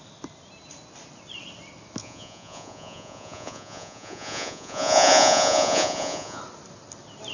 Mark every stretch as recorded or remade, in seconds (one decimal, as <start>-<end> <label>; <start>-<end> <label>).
0.0-2.0 recorded; 2.0-6.4 remade; 6.4-7.3 recorded